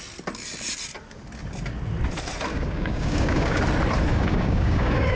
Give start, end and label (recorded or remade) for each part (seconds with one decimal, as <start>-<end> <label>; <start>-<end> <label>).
0.0-2.5 recorded; 2.5-3.6 remade; 3.6-4.1 recorded; 4.1-5.2 remade